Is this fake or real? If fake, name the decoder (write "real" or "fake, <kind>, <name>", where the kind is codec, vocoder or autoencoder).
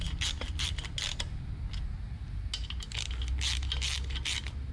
real